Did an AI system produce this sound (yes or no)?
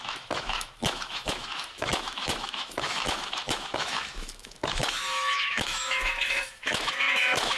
yes